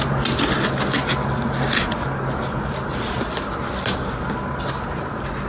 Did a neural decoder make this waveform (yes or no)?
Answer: no